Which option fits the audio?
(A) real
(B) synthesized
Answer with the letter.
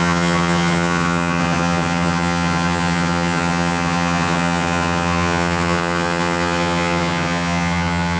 B